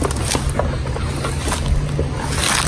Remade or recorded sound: recorded